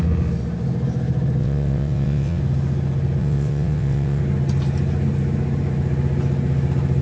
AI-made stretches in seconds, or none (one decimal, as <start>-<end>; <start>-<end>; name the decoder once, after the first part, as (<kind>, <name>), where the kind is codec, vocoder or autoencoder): 1.4-2.4 (vocoder, WaveNeXt); 3.2-4.2